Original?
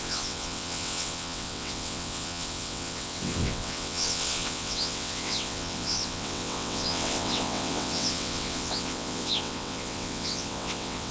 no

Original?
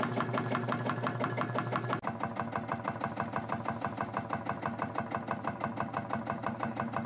yes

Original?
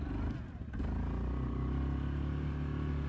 yes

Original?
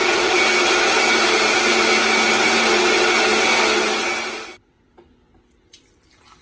yes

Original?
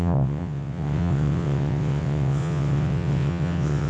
no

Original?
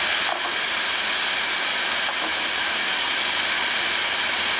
yes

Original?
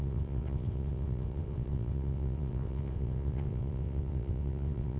no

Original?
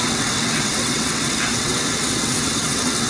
no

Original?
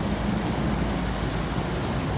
yes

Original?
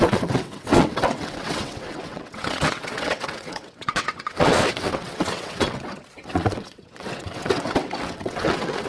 no